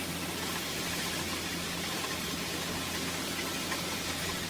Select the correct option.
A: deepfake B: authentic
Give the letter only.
B